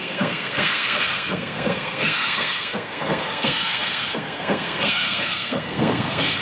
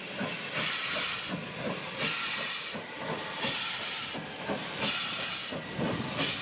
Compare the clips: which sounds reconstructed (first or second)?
first